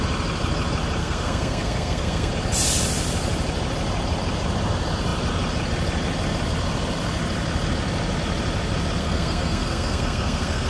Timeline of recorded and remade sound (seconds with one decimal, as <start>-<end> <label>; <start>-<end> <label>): 0.0-1.0 recorded; 1.0-2.3 remade; 2.3-9.0 recorded; 9.0-10.7 remade